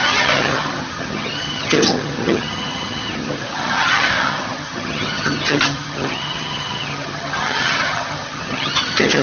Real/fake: fake